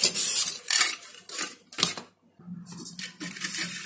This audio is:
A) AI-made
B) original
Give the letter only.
B